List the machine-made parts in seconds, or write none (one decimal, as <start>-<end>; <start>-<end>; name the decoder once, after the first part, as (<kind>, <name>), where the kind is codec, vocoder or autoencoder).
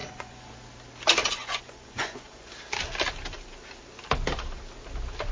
0.0-0.5 (vocoder, Vocos); 1.2-2.5